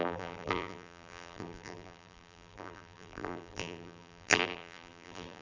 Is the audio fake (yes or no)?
yes